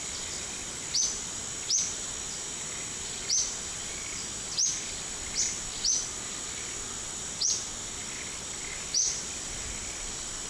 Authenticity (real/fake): real